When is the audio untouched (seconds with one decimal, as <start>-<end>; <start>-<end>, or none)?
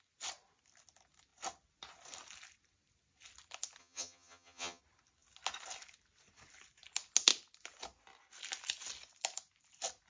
0.0-3.8; 4.8-10.1